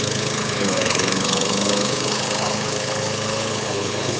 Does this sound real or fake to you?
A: fake